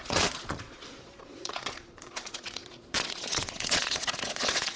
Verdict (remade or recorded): remade